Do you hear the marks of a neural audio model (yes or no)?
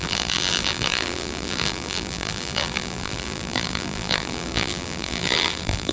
yes